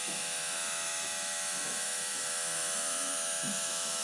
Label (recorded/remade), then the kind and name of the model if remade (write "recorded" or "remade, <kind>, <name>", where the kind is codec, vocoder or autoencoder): remade, autoencoder, DAC-VAE